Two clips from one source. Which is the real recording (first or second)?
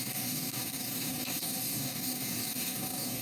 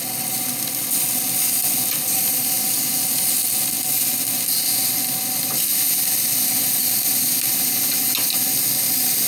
second